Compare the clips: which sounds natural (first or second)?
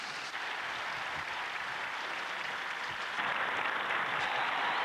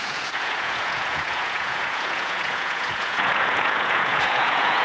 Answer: first